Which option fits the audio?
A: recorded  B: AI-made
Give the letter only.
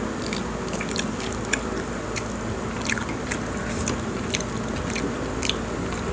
A